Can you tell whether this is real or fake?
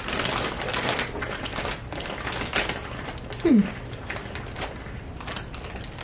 real